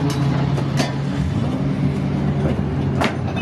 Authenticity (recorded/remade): recorded